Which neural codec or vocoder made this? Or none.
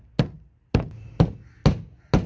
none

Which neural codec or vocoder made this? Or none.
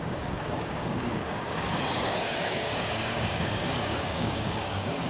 codec, DAC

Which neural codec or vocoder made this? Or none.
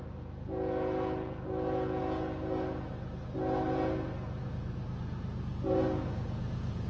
vocoder, Vocos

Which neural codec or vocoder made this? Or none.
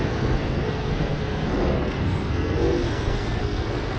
codec, SNAC